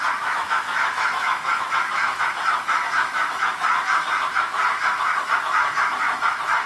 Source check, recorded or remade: remade